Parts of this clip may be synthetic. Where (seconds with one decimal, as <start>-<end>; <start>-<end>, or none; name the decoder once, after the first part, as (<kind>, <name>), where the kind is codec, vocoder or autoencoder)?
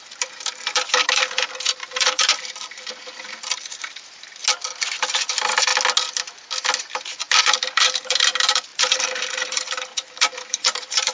0.0-4.4 (vocoder, BigVGAN v2); 5.1-5.7; 7.2-11.1